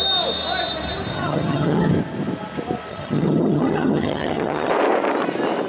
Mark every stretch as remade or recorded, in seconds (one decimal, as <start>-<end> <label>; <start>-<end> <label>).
0.0-1.1 recorded; 1.1-1.9 remade; 1.9-2.9 recorded; 2.9-4.7 remade; 4.7-5.7 recorded